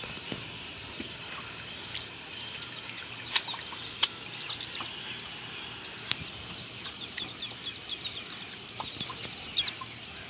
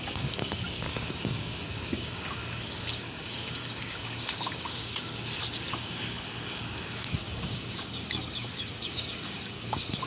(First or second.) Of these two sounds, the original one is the first